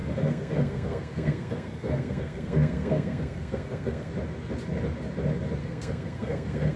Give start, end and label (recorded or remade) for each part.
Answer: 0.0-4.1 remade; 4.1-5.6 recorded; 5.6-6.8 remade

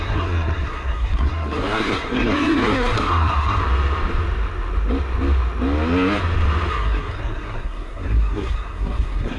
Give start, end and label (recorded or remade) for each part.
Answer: 0.0-3.6 remade; 3.6-6.7 recorded; 6.7-9.4 remade

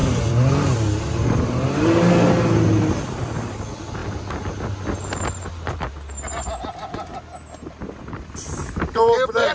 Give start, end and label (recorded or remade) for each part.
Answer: 0.0-2.1 remade; 2.1-8.6 recorded; 8.6-9.5 remade

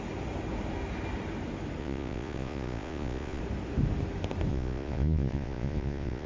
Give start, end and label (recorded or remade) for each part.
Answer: 0.0-1.8 recorded; 1.8-3.4 remade; 3.4-4.5 recorded; 4.5-6.3 remade

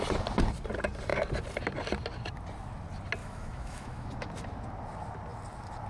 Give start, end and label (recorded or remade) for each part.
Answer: 0.0-3.2 recorded; 3.2-4.1 remade; 4.1-5.9 recorded

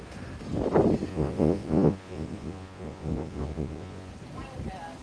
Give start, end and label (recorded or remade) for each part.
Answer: 0.0-1.1 recorded; 1.1-4.1 remade; 4.1-5.0 recorded